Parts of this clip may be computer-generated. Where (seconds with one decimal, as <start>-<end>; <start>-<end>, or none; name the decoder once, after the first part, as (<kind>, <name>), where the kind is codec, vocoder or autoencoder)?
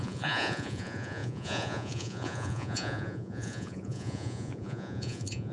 0.0-5.5 (vocoder, Vocos)